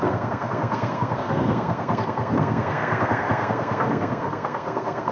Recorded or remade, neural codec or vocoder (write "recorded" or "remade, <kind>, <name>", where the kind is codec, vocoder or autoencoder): remade, codec, SNAC